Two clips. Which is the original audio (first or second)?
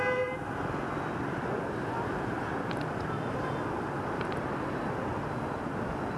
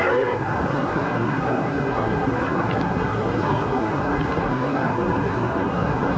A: first